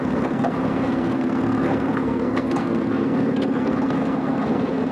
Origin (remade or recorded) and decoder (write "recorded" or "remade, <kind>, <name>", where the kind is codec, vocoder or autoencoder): remade, codec, SNAC